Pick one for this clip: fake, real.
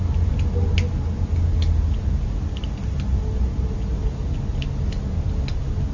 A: real